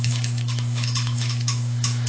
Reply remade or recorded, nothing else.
remade